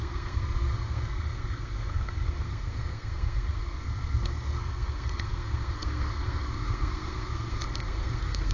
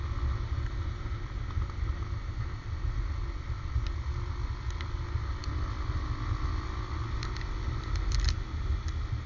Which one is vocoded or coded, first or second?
first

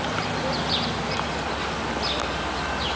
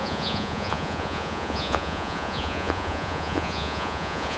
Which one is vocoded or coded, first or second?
second